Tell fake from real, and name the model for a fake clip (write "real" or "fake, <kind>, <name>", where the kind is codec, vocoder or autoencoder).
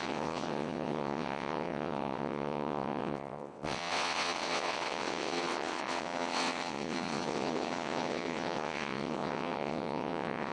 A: fake, vocoder, WaveNeXt